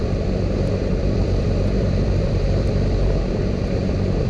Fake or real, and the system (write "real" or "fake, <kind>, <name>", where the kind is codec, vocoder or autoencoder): fake, vocoder, BigVGAN v2